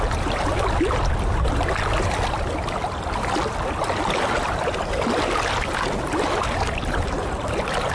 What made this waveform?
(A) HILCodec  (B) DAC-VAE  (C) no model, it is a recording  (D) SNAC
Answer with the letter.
C